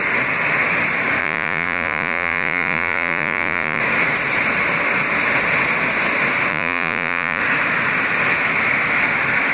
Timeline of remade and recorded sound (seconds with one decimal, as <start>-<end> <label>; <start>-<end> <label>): 0.0-1.2 recorded; 1.2-3.8 remade; 3.8-6.5 recorded; 6.5-7.4 remade; 7.4-9.5 recorded